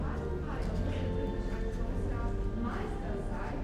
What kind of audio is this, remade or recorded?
recorded